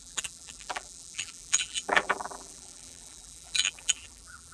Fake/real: fake